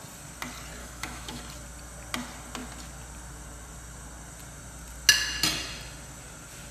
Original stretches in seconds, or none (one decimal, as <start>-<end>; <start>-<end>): 0.0-0.8; 1.4-6.7

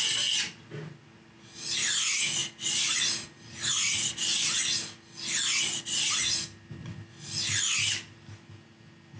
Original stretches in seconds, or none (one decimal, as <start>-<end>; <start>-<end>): 0.0-9.2

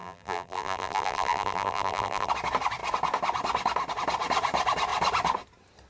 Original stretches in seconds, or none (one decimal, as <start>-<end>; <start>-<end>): 2.3-5.9

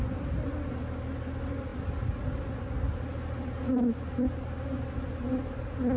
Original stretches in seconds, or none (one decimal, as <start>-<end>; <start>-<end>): 0.0-6.0

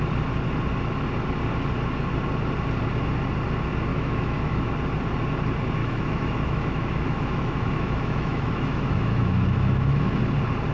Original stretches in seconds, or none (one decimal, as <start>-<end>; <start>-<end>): 0.0-3.9; 4.7-5.8; 10.2-10.7

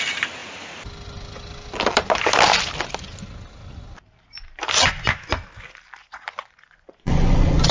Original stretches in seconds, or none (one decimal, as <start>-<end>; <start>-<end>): 0.0-6.0

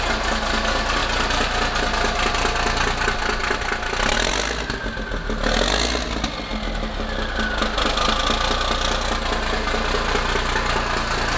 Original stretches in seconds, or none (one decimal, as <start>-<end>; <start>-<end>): 0.0-11.4